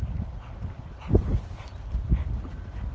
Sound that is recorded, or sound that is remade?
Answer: recorded